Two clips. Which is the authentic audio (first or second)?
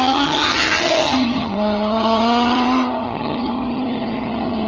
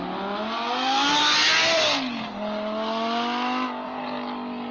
second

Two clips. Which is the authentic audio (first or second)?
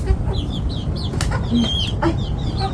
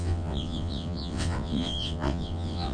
first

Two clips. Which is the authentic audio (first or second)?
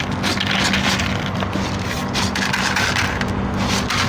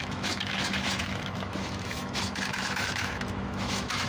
first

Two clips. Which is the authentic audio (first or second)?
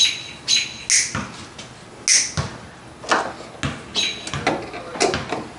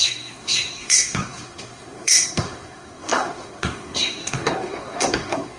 first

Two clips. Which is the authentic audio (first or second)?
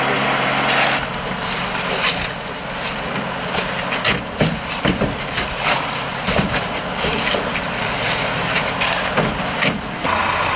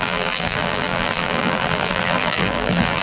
first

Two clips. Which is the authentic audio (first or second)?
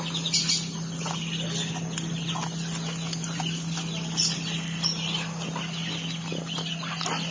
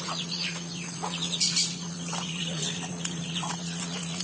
first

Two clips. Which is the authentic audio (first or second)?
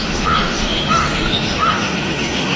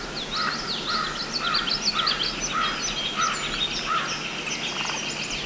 second